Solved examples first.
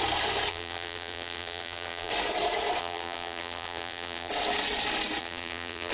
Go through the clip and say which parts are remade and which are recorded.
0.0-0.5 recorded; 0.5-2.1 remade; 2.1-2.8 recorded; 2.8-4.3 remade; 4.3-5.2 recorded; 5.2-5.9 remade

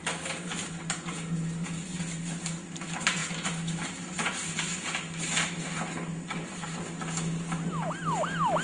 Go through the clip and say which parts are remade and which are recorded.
0.0-8.6 recorded

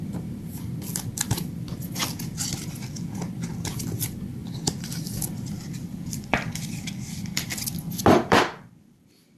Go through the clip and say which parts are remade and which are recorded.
0.0-2.0 remade; 2.0-4.0 recorded; 4.0-9.4 remade